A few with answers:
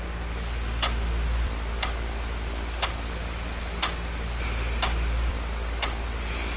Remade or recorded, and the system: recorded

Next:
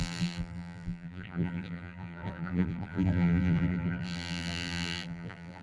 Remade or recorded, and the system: remade, vocoder, BigVGAN v2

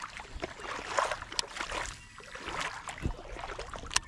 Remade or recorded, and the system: recorded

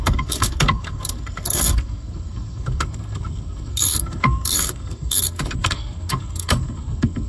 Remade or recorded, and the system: remade, codec, SNAC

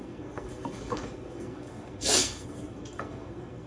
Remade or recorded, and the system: remade, codec, SNAC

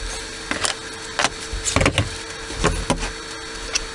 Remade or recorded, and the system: recorded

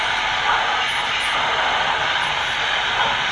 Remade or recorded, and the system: recorded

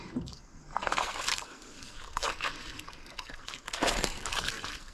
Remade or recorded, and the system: remade, codec, SNAC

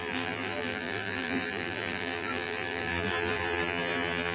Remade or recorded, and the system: remade, vocoder, BigVGAN v2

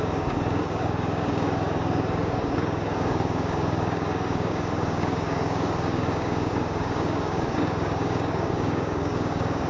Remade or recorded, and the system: remade, codec, DAC